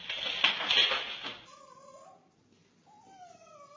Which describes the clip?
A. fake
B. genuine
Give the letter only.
B